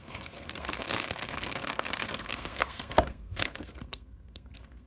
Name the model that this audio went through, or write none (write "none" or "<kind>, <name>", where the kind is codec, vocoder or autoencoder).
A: codec, SNAC